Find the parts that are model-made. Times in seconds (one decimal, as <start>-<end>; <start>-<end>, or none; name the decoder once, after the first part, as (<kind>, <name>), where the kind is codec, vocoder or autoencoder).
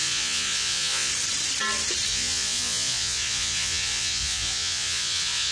0.0-1.1 (vocoder, Vocos); 2.1-5.5